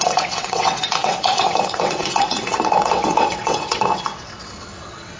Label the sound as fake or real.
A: fake